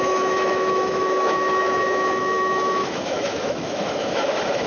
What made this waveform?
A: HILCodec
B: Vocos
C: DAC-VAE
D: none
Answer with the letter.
C